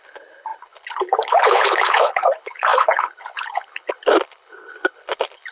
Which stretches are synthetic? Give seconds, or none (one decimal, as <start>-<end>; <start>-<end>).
0.0-5.5